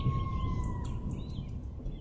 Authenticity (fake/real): real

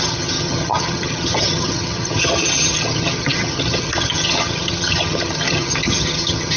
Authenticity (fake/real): fake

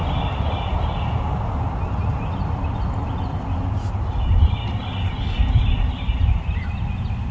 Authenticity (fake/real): real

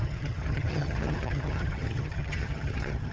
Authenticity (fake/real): fake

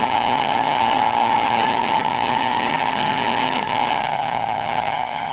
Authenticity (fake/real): fake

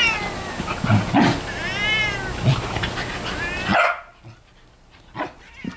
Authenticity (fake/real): real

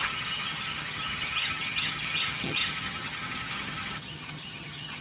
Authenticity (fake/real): fake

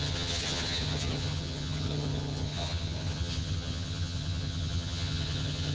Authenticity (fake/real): fake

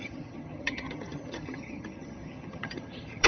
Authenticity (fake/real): fake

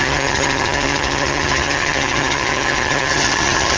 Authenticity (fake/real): fake